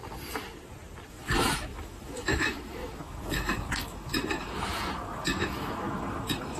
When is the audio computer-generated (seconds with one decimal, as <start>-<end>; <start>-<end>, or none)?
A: 1.1-6.6